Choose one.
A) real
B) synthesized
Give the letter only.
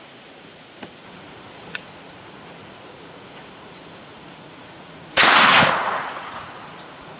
B